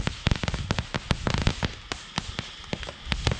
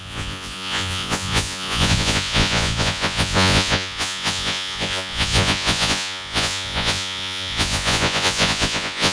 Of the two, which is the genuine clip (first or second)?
first